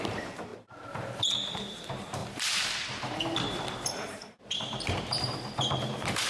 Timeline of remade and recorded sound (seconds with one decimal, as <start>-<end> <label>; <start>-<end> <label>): 0.0-0.5 remade; 0.5-1.5 recorded; 1.5-6.3 remade